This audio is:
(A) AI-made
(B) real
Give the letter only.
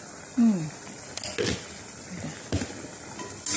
B